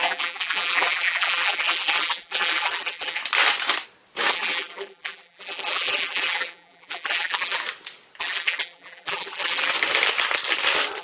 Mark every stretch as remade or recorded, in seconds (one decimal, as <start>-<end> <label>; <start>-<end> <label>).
0.0-3.2 remade; 3.2-4.3 recorded; 4.3-7.6 remade; 7.6-8.2 recorded; 8.2-9.7 remade; 9.7-11.0 recorded